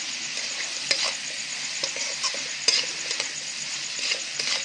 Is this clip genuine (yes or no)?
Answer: yes